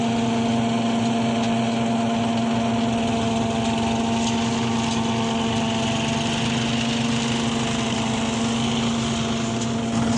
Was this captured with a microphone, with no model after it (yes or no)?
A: yes